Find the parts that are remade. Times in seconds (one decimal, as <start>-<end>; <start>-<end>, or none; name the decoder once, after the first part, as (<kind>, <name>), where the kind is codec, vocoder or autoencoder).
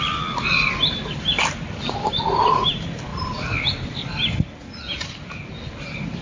0.0-6.2 (vocoder, BigVGAN v2)